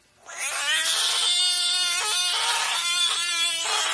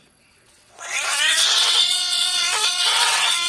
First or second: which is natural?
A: first